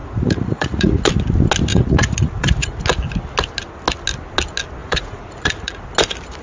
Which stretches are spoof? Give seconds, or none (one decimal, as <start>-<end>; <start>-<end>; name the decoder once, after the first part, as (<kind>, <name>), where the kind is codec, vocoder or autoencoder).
0.0-1.0 (vocoder, Vocos); 1.7-2.8; 4.8-5.8